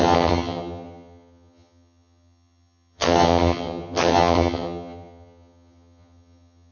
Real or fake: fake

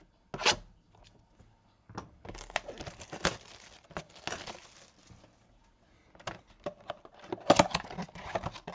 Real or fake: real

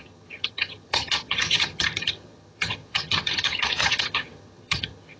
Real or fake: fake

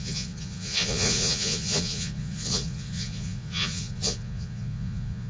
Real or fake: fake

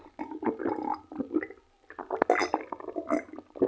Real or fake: real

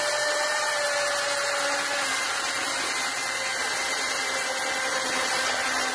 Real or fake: real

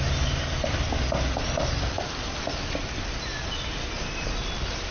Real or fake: real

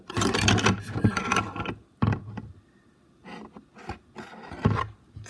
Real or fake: real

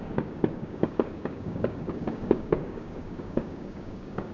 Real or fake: fake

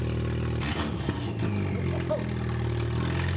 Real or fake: real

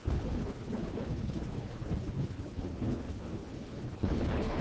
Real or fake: fake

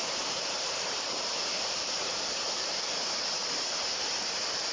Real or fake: fake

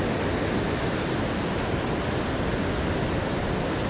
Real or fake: real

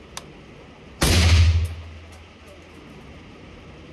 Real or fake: real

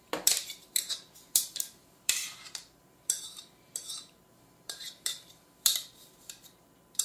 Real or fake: fake